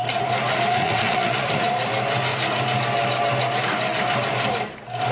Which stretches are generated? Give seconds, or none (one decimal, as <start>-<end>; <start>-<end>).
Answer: 0.8-1.7